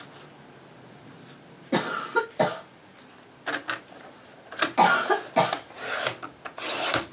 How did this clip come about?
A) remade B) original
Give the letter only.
B